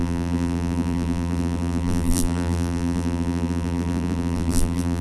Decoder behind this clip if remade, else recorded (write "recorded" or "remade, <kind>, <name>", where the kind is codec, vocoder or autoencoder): remade, vocoder, BigVGAN v2